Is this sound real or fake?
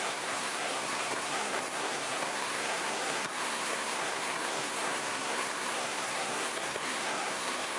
fake